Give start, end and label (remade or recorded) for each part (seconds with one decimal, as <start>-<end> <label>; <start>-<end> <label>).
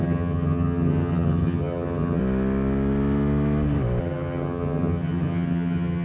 0.0-2.2 remade; 2.2-4.0 recorded; 4.0-6.0 remade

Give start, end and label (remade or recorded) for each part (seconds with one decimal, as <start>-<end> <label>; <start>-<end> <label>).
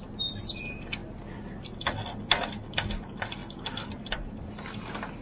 0.0-5.2 recorded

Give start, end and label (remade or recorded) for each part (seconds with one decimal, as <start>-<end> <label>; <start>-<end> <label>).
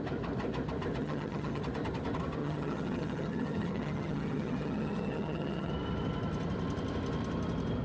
0.0-1.0 recorded; 1.0-1.6 remade; 1.6-2.4 recorded; 2.4-5.7 remade; 5.7-7.8 recorded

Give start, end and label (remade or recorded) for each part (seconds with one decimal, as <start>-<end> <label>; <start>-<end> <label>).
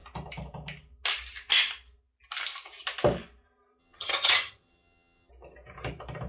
0.0-3.8 recorded; 3.8-5.3 remade; 5.3-6.3 recorded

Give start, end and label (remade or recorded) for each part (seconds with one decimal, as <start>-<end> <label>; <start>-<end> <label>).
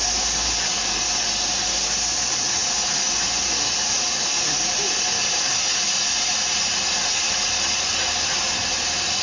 0.0-9.2 recorded